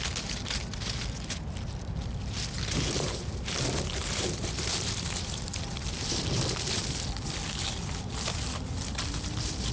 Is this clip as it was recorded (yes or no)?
yes